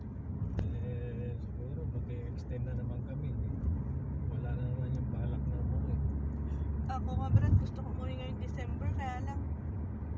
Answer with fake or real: real